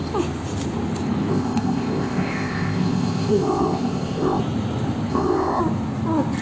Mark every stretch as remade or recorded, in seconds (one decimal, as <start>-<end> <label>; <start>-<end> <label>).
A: 0.0-1.3 recorded; 1.3-4.4 remade; 4.4-5.1 recorded; 5.1-5.6 remade; 5.6-6.4 recorded